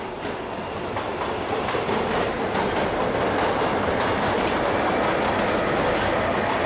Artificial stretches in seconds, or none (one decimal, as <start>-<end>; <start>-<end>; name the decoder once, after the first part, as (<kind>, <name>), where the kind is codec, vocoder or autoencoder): none